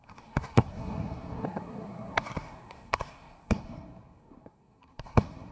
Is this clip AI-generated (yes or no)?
yes